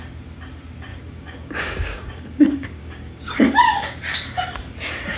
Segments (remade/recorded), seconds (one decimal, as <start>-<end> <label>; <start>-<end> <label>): 0.0-0.9 recorded; 0.9-4.0 remade; 4.0-5.2 recorded